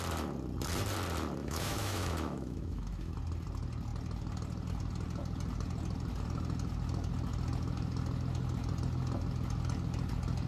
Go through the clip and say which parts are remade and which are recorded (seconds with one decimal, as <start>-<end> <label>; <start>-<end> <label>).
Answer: 0.0-1.4 recorded; 1.4-3.1 remade; 3.1-10.5 recorded